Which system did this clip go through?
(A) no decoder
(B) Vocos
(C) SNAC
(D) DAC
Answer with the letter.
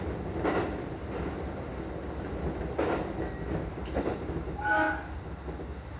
A